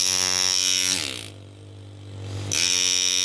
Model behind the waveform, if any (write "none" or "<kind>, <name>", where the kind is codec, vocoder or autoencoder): none